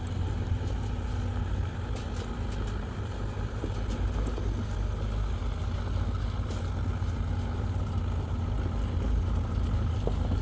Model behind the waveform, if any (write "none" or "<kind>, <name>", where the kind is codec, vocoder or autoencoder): none